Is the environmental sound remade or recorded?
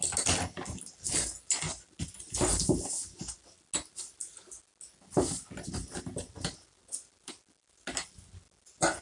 recorded